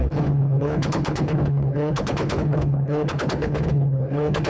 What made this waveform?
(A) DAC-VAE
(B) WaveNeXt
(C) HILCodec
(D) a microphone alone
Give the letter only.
C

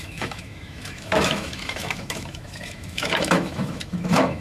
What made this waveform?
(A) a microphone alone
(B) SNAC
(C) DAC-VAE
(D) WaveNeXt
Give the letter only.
C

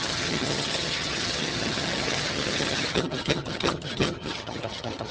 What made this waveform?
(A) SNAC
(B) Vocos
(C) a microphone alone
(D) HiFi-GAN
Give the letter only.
D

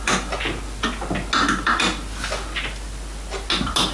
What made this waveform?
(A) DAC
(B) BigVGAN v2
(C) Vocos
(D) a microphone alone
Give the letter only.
D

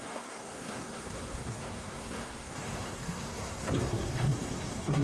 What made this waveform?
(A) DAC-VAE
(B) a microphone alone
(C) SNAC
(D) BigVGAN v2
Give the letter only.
C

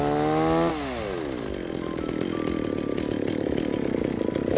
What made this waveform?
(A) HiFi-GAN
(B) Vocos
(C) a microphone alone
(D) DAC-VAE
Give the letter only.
C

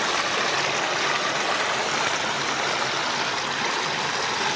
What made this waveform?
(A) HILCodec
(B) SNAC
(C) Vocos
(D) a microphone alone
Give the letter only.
D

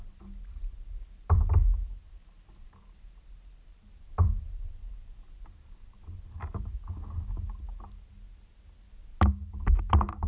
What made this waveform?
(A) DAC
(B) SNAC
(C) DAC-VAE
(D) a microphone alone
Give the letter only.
D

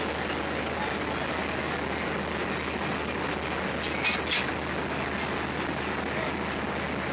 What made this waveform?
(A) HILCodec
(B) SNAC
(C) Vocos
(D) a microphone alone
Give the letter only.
D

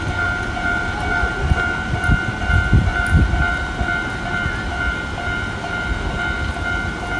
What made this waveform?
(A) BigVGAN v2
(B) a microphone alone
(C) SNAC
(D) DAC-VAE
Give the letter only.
A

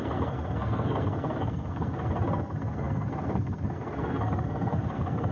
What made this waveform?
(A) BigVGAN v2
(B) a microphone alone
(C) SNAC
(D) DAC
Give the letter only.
C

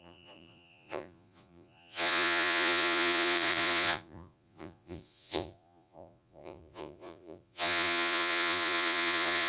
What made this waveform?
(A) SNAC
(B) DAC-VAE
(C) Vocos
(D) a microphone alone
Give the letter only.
C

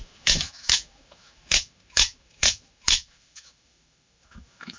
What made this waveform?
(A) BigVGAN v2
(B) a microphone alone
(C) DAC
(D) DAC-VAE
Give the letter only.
D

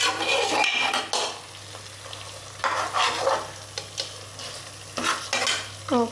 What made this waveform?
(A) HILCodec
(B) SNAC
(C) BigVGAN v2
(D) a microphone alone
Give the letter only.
D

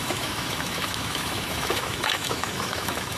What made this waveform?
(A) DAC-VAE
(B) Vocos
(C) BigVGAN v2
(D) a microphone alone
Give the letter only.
A